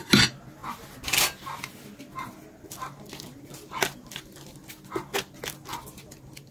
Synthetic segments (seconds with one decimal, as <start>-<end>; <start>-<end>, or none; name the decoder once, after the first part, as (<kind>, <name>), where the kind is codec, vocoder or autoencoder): none